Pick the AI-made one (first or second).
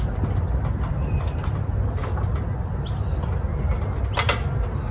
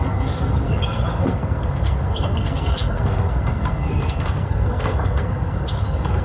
second